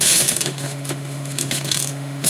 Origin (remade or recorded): remade